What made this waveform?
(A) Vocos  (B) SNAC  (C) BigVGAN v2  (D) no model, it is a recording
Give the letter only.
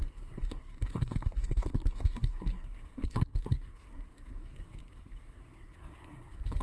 B